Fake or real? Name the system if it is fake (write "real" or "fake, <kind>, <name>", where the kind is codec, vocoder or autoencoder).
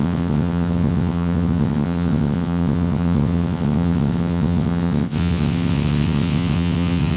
fake, vocoder, WaveNeXt